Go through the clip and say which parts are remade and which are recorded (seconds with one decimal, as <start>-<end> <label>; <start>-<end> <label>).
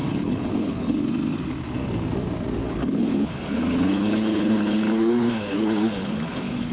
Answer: 0.0-1.0 remade; 1.0-2.6 recorded; 2.6-6.7 remade